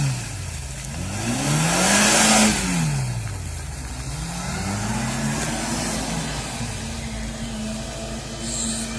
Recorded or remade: recorded